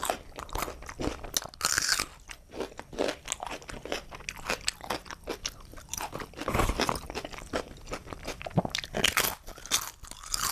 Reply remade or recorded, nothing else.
recorded